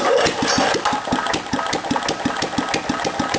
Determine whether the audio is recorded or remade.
recorded